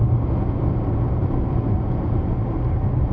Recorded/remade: recorded